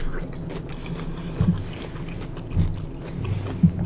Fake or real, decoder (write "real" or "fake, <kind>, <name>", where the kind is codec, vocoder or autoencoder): real